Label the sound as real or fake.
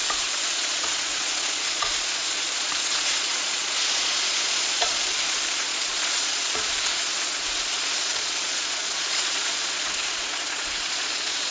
fake